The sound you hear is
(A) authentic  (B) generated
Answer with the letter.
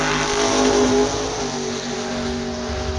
A